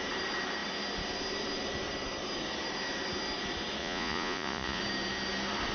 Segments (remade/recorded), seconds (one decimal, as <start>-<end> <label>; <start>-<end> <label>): 0.0-3.8 recorded; 3.8-4.8 remade; 4.8-5.7 recorded